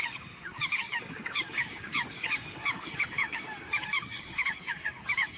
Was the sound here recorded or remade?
remade